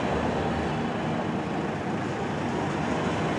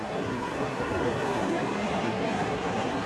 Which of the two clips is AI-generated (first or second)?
second